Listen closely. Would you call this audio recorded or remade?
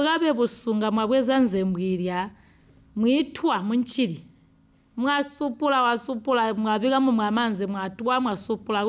recorded